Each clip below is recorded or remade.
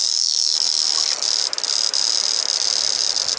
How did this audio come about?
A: recorded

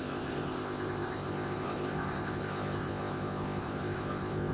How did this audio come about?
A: remade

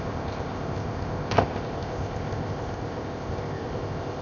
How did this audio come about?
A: remade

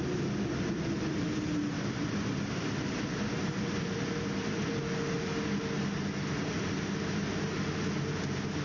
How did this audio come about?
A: recorded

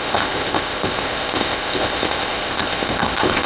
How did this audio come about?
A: remade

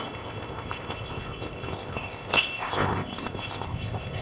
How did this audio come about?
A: remade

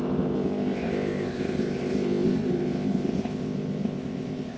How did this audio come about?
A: remade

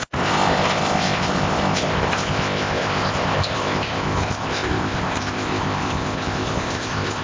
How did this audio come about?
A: remade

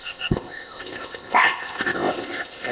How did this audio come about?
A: remade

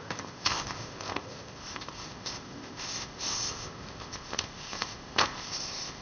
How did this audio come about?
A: remade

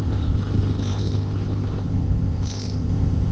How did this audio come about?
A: remade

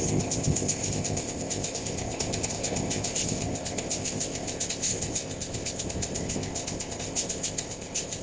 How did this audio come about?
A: remade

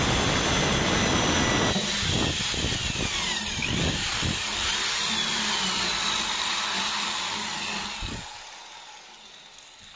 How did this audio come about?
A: recorded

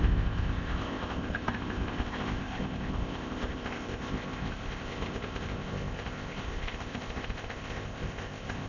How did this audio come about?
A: remade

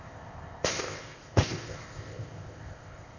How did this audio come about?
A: remade